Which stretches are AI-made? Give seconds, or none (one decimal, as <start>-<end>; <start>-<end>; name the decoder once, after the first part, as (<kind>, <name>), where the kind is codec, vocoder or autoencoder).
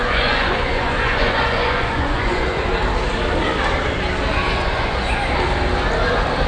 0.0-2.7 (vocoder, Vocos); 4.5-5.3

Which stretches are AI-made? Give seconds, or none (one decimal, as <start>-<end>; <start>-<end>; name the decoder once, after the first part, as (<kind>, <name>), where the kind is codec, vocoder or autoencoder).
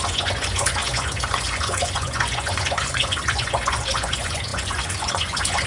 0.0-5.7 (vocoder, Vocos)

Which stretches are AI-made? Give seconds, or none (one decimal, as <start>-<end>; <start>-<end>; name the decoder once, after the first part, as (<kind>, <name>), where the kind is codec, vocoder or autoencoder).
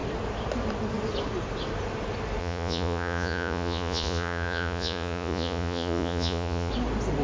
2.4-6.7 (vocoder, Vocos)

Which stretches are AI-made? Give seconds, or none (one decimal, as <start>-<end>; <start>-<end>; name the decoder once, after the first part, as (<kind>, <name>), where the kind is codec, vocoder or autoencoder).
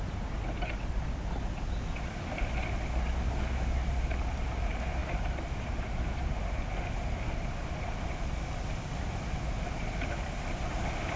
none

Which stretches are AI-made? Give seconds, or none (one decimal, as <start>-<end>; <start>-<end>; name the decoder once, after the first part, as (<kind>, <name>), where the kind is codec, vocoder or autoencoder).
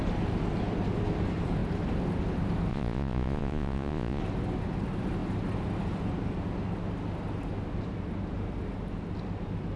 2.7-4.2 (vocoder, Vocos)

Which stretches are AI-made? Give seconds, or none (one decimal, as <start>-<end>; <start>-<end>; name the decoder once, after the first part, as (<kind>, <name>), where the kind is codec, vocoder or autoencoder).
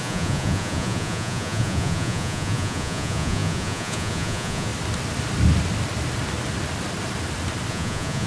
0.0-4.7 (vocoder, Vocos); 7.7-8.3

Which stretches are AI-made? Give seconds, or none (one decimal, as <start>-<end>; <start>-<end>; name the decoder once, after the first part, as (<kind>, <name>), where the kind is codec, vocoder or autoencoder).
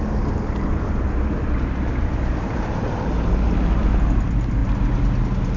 none